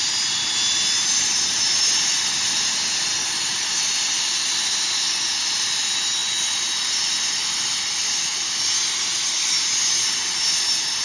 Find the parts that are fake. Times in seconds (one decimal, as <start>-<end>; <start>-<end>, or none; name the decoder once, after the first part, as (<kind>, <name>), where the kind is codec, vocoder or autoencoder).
none